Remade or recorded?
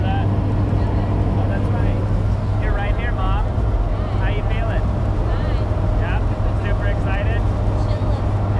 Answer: recorded